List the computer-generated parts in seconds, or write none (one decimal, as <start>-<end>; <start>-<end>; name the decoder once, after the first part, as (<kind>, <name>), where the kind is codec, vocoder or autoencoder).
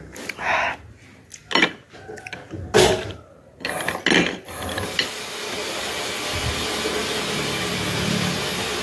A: none